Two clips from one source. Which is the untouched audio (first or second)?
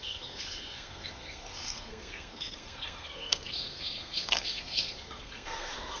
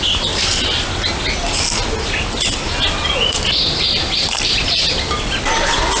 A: second